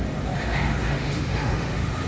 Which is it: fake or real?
fake